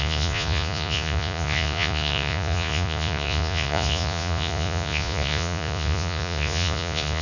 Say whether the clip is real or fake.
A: fake